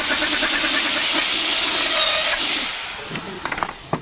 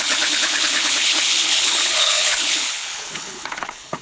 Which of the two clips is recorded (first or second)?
first